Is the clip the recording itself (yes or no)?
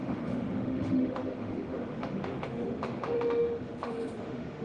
no